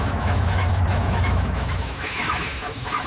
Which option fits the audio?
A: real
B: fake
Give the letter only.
B